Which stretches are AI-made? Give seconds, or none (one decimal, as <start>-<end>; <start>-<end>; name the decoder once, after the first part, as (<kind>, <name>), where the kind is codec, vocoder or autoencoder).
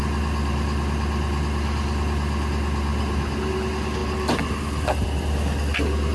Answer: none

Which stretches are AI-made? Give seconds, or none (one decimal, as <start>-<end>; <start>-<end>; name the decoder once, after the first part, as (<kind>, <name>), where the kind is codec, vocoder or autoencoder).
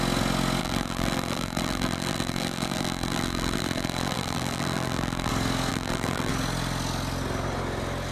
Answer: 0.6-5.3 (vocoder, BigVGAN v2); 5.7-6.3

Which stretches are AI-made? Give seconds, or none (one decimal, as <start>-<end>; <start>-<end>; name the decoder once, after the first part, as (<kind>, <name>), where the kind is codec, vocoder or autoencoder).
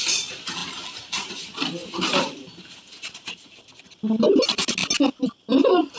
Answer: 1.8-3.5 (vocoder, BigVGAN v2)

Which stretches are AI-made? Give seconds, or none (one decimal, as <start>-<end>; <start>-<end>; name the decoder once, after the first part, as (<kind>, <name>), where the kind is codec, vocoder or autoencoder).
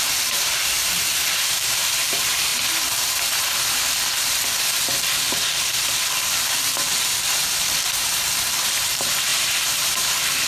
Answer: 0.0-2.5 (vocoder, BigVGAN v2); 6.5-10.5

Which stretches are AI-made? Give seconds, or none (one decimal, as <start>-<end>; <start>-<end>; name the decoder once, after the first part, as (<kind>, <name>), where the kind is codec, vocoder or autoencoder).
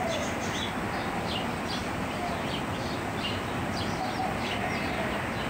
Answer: 1.8-4.2 (vocoder, BigVGAN v2)